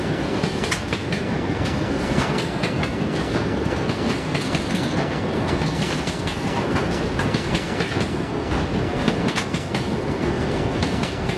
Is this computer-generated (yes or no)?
yes